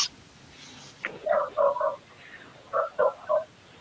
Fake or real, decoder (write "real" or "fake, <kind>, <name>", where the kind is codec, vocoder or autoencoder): real